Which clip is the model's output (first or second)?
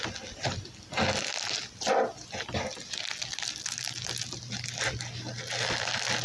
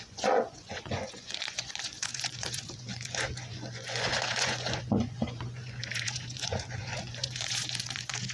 second